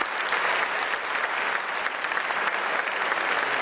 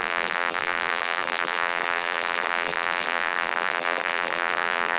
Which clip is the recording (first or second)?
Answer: first